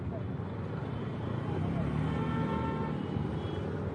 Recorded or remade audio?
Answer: recorded